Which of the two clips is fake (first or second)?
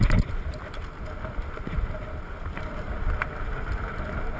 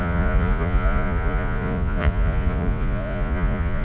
second